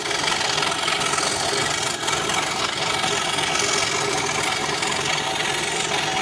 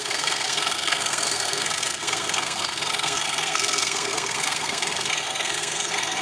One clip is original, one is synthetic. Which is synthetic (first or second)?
second